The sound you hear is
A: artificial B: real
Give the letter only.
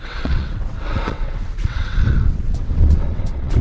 A